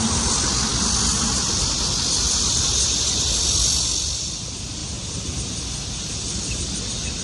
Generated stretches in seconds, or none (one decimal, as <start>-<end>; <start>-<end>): none